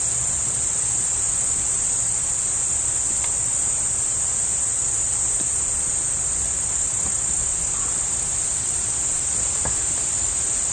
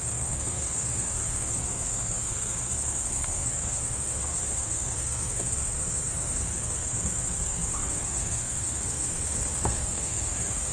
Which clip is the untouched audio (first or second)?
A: first